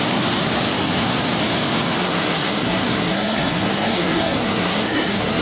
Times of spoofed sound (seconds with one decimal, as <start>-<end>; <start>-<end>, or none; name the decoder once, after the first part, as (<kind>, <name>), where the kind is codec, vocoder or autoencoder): 2.0-5.4 (codec, SNAC)